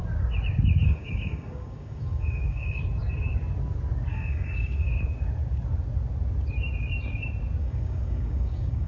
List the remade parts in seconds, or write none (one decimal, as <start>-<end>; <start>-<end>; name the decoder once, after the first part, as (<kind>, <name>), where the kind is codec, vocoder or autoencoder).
0.8-2.8 (codec, DAC); 4.1-4.9; 7.6-8.9

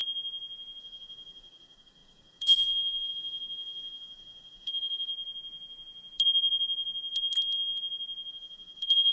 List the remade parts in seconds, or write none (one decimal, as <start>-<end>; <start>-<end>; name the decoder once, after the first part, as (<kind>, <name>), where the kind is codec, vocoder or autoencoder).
0.8-5.1 (codec, DAC); 8.3-9.1